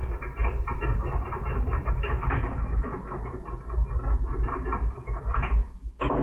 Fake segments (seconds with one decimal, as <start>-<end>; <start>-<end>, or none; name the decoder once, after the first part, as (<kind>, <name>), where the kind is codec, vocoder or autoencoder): 1.9-2.9 (autoencoder, DAC-VAE); 4.9-6.2